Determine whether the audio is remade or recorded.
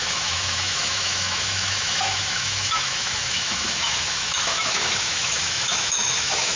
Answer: remade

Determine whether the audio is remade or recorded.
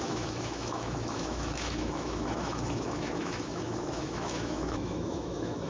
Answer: remade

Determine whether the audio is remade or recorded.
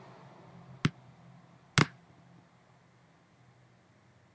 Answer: recorded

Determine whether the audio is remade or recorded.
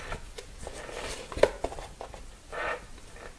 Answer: recorded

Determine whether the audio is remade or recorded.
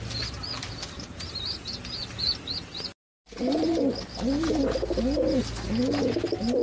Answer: recorded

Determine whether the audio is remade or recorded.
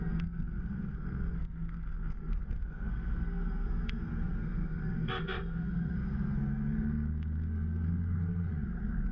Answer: remade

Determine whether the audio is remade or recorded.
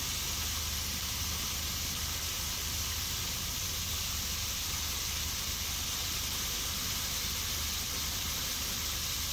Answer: recorded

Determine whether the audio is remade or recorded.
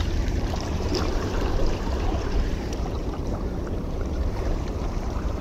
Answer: remade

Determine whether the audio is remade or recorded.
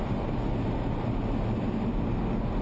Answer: recorded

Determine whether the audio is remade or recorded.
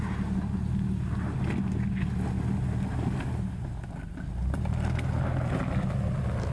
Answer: recorded